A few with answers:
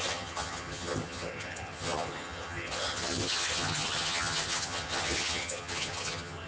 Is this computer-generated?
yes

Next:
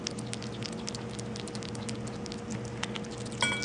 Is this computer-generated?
no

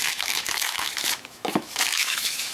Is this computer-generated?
yes